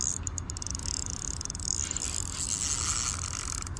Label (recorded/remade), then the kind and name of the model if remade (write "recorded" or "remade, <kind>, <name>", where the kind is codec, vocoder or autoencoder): recorded